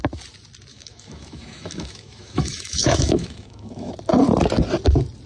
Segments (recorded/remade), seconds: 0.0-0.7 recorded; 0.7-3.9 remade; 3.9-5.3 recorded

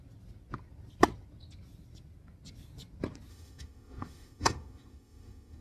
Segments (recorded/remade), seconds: 0.0-3.3 recorded; 3.3-5.6 remade

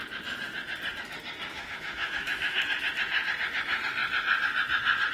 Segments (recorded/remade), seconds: 0.0-1.5 recorded; 1.5-2.6 remade; 2.6-5.1 recorded

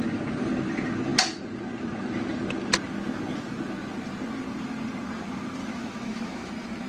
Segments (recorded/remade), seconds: 0.0-5.6 recorded; 5.6-6.5 remade; 6.5-6.9 recorded

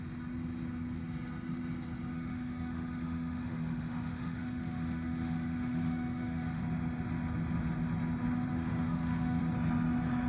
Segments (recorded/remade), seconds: 0.0-2.1 recorded; 2.1-6.6 remade; 6.6-8.5 recorded; 8.5-9.4 remade; 9.4-10.3 recorded

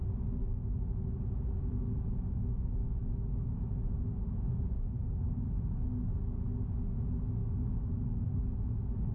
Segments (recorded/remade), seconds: 0.0-1.7 recorded; 1.7-3.7 remade; 3.7-7.4 recorded; 7.4-8.3 remade; 8.3-9.1 recorded